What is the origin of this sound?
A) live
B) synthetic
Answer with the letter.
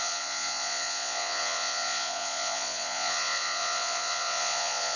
B